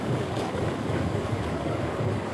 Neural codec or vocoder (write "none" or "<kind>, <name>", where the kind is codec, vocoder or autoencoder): codec, DAC